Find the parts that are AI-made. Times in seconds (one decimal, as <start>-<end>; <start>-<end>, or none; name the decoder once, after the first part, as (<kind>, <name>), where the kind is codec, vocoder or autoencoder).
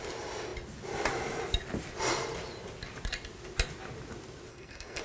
4.5-5.0 (codec, SNAC)